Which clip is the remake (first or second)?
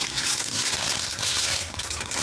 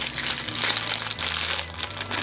first